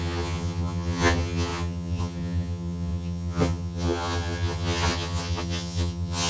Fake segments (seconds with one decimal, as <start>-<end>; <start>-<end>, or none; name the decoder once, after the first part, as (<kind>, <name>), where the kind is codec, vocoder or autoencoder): 0.0-6.3 (vocoder, HiFi-GAN)